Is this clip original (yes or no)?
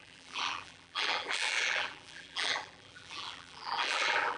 no